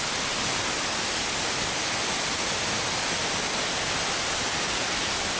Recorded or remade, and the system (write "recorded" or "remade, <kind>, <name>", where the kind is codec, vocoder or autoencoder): recorded